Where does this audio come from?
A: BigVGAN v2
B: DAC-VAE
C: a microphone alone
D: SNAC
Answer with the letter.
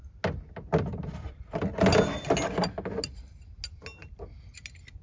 C